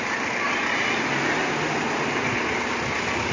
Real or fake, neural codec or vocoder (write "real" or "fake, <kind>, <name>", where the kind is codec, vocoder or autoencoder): real